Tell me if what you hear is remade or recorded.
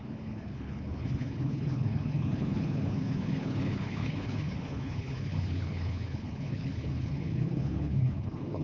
remade